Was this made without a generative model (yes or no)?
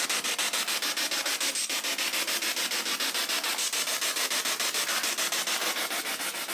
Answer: yes